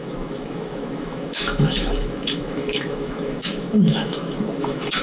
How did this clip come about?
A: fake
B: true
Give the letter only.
A